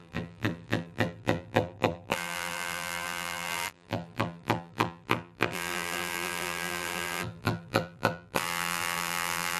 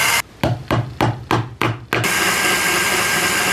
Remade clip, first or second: first